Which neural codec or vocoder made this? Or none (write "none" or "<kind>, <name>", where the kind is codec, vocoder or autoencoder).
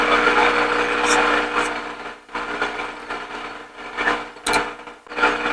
none